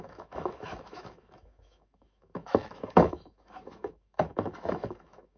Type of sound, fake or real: fake